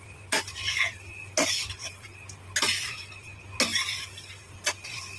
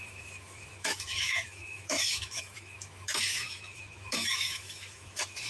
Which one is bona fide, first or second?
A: first